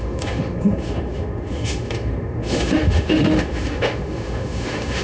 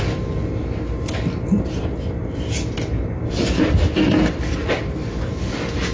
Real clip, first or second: second